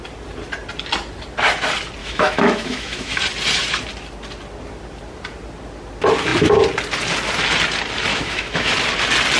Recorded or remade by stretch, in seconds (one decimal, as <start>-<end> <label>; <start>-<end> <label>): 0.0-2.0 recorded; 2.0-3.2 remade; 3.2-8.1 recorded; 8.1-8.7 remade; 8.7-9.4 recorded